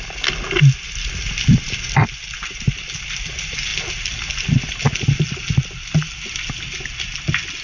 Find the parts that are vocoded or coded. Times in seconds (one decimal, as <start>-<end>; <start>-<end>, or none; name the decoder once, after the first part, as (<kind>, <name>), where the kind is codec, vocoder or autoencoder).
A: none